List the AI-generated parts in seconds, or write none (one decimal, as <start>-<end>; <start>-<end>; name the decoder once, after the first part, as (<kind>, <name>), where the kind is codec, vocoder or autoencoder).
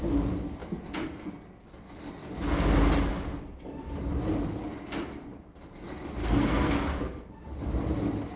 6.2-7.3 (codec, SNAC)